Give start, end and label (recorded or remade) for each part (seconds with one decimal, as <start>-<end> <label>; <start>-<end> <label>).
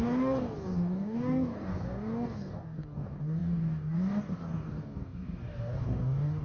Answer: 0.0-6.4 remade